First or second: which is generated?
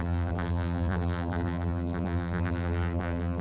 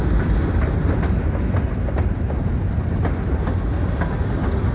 first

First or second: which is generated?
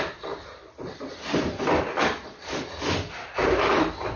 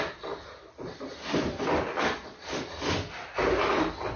first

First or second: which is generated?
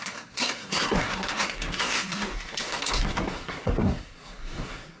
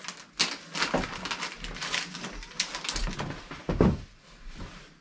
first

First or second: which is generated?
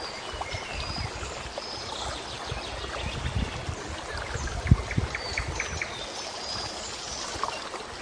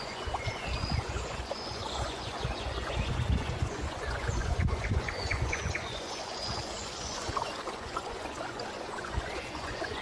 second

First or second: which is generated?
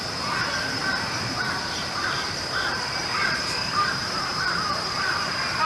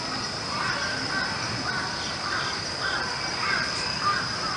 first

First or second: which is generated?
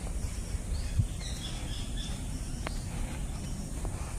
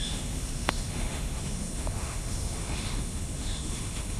second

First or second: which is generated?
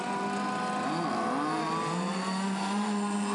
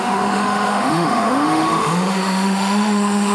second